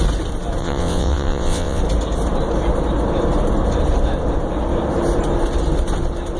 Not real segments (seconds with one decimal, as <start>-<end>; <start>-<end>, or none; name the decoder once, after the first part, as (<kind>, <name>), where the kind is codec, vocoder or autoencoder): 0.6-1.8 (vocoder, WaveNeXt)